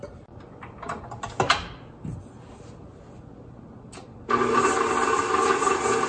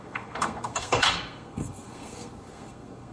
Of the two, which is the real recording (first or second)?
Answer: first